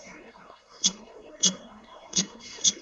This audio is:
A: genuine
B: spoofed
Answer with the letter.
B